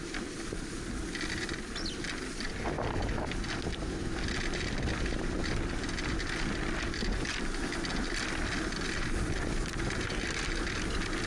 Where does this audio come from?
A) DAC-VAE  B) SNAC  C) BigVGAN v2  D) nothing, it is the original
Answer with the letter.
D